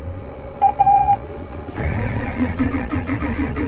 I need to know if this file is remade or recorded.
remade